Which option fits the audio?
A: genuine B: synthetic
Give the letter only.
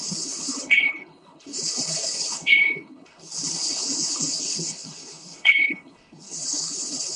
B